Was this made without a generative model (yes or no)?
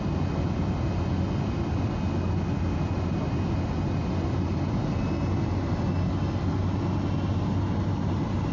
yes